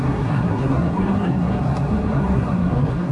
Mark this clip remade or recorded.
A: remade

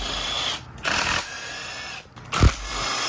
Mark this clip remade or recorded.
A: recorded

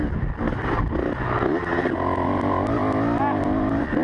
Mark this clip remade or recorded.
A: recorded